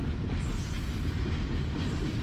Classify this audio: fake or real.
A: real